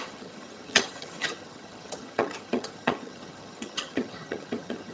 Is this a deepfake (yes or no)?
yes